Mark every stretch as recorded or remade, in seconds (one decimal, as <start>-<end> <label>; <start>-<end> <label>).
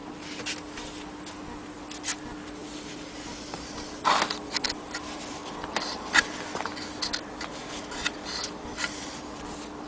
0.0-9.9 recorded